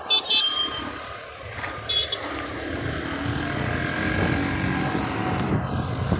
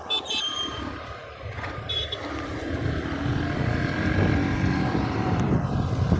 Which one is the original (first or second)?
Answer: first